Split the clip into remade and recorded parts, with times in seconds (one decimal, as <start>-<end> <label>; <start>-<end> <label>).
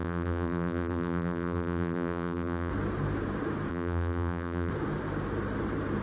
0.0-2.7 remade; 2.7-3.7 recorded; 3.7-4.7 remade; 4.7-6.0 recorded